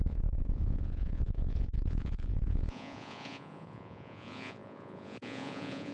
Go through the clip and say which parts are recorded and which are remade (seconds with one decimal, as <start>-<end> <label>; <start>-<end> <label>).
0.0-5.9 remade